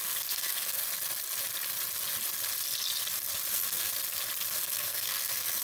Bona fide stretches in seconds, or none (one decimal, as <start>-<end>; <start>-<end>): 0.8-3.5; 3.9-4.5